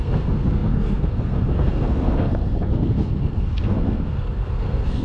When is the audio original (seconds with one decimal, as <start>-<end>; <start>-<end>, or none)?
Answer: none